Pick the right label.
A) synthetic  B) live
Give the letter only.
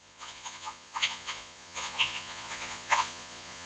A